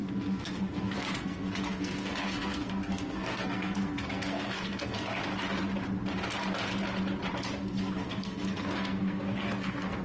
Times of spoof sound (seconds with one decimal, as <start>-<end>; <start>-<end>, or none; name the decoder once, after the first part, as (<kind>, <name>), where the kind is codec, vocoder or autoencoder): 0.0-5.2 (codec, SNAC); 7.6-10.0